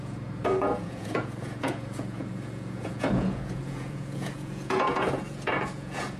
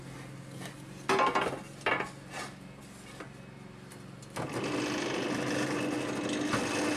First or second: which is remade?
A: first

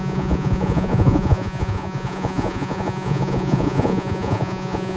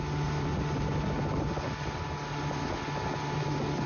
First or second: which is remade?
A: first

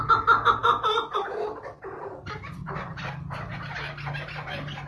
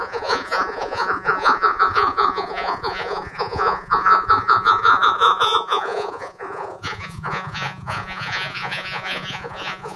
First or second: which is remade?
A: second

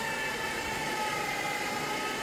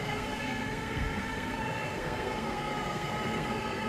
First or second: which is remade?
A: second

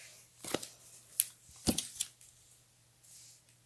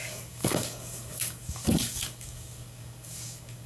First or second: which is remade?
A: second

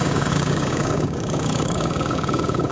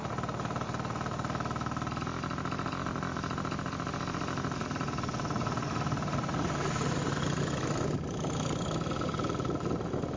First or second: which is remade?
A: first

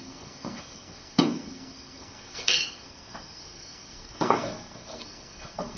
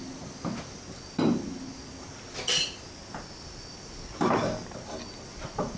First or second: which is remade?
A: first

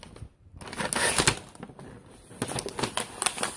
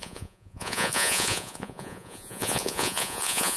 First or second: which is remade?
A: second